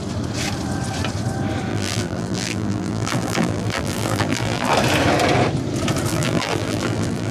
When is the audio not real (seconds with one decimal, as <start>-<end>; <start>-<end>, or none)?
1.7-4.7; 6.1-7.3